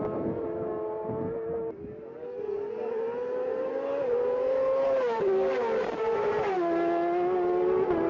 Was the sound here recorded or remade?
recorded